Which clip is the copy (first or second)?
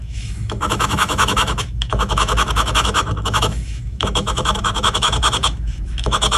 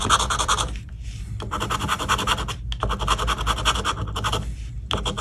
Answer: first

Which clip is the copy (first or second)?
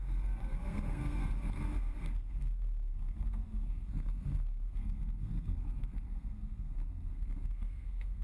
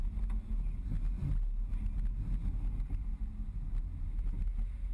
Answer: first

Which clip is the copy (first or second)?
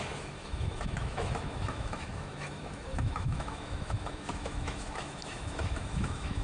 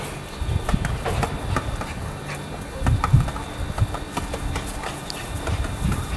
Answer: first